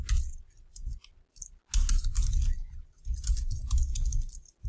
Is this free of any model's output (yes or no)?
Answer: yes